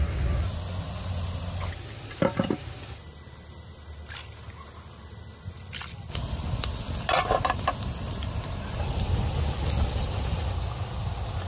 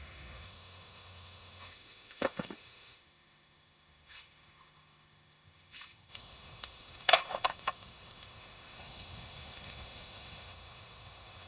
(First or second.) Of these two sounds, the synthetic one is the second